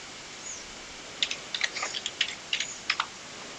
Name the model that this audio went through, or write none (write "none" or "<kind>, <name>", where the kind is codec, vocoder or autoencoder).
none